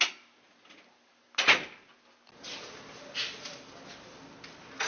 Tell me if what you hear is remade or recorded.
recorded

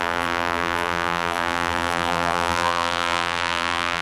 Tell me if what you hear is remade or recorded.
remade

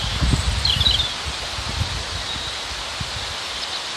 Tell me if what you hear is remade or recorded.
recorded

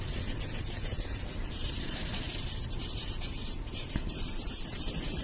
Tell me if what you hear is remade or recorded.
remade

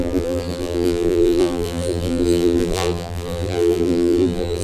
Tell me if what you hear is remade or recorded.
remade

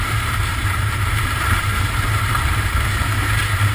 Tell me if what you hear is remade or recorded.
remade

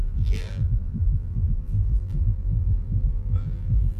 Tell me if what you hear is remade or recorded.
remade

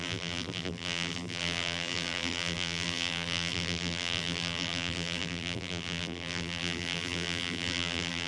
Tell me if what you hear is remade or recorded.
remade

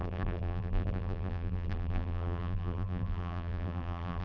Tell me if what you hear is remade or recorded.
remade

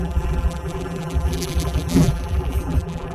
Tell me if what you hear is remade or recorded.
remade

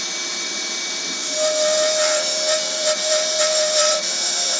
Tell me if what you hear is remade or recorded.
remade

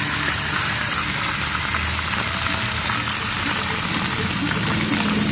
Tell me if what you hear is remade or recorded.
remade